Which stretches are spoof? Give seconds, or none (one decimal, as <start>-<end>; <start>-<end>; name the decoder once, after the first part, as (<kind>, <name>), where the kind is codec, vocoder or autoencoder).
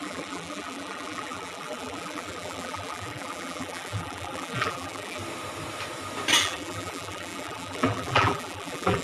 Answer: 0.0-5.2 (vocoder, BigVGAN v2); 6.4-9.0